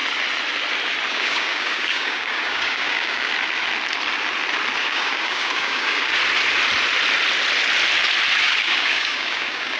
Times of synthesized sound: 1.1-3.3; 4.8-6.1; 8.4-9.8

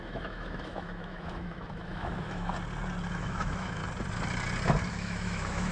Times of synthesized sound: 0.0-2.5; 3.1-3.8; 4.9-5.7

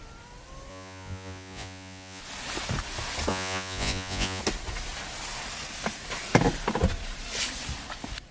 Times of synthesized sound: 0.7-2.2; 3.3-4.4